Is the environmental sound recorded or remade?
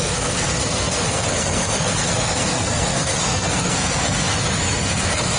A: remade